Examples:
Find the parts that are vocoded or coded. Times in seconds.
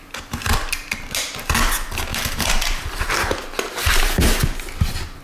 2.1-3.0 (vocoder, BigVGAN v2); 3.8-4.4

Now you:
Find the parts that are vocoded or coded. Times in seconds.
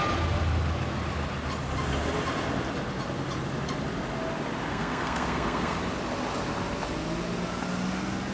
4.7-5.8 (codec, SNAC)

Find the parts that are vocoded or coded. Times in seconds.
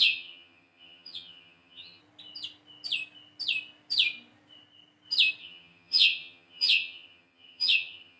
0.0-2.0 (vocoder, HiFi-GAN); 5.4-8.2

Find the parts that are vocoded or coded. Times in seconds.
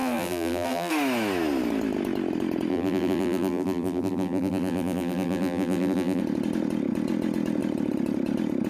0.0-0.9 (vocoder, BigVGAN v2); 2.7-6.2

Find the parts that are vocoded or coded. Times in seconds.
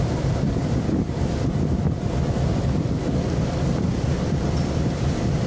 0.0-5.5 (vocoder, BigVGAN v2)